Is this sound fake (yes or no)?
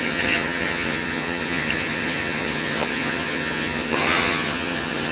yes